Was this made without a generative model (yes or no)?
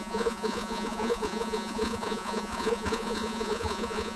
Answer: no